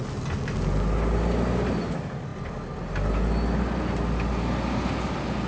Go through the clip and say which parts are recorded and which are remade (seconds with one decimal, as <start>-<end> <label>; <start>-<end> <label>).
0.0-5.5 recorded